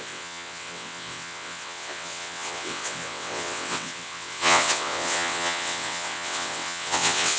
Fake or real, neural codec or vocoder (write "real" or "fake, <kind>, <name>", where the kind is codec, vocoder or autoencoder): fake, vocoder, WaveNeXt